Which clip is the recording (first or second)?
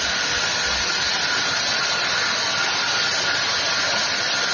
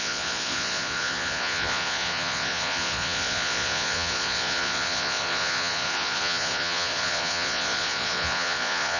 first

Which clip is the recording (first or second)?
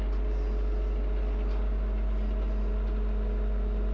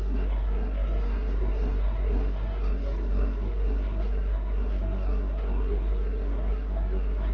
first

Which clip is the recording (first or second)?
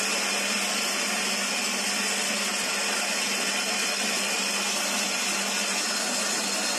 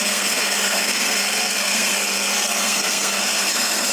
first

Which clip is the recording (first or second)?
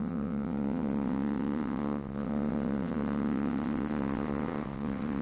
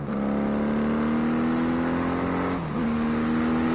second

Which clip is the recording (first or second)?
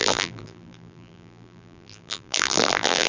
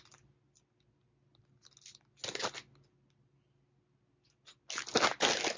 second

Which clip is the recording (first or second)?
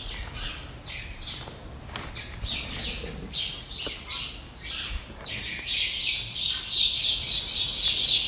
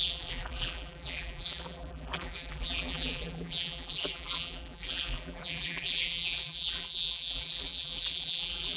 first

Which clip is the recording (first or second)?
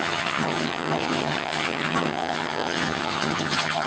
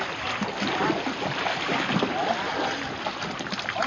second